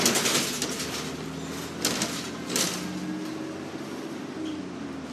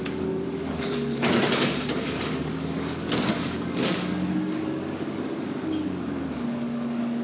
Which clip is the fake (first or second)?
second